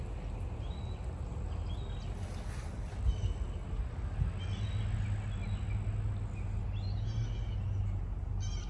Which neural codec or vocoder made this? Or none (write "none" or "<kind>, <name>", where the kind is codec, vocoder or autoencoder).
none